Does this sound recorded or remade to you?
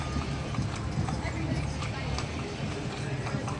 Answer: recorded